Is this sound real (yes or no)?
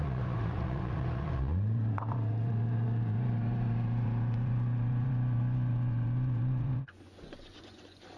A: no